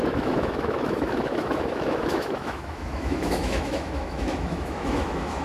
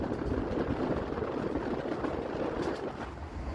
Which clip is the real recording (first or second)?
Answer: second